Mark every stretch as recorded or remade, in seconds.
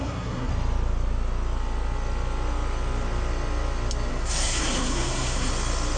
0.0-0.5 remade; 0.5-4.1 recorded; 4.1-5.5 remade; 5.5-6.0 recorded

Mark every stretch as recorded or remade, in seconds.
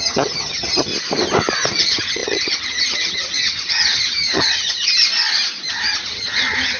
0.0-0.9 remade; 0.9-1.8 recorded; 1.8-4.9 remade; 4.9-5.7 recorded; 5.7-6.8 remade